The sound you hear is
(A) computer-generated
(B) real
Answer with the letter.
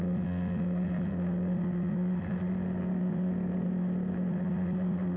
B